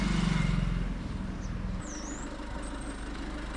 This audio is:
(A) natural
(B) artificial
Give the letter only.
A